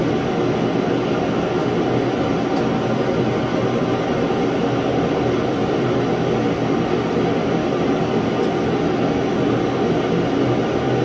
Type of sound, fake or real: real